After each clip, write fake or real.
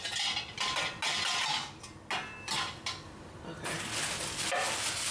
real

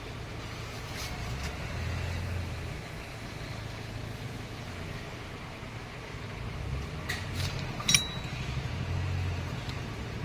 real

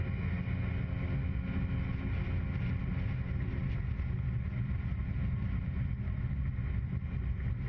real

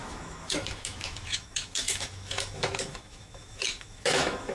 fake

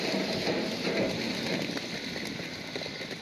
real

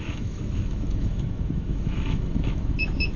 fake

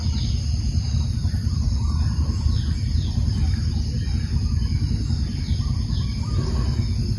real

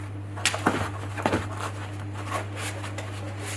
real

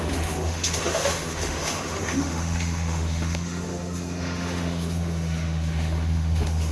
fake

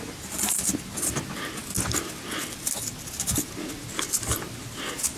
real